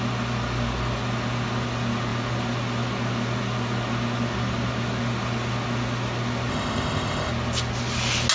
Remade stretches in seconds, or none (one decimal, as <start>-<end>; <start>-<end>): 6.5-7.3